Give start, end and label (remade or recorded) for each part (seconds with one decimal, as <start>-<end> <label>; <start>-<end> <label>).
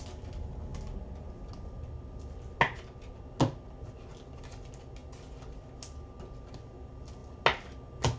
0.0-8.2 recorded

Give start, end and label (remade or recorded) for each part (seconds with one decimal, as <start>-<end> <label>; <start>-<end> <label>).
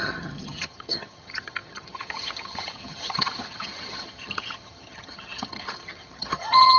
0.0-6.8 remade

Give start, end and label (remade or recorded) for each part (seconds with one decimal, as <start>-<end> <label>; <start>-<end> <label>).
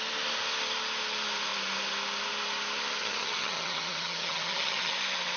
0.0-3.0 recorded; 3.0-4.9 remade; 4.9-5.4 recorded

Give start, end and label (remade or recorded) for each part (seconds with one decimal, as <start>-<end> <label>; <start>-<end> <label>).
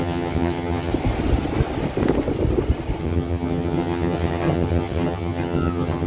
0.0-0.9 remade; 0.9-3.0 recorded; 3.0-6.1 remade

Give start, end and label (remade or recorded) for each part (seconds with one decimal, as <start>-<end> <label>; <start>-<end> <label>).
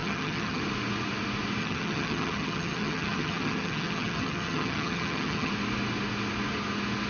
0.0-0.6 remade; 0.6-1.6 recorded; 1.6-5.5 remade; 5.5-7.1 recorded